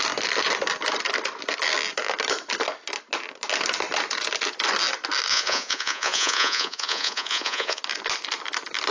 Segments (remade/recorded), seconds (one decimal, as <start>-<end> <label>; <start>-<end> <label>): 0.0-5.3 recorded; 5.3-7.8 remade; 7.8-8.9 recorded